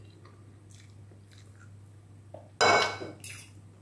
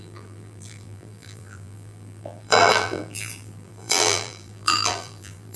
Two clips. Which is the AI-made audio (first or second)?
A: second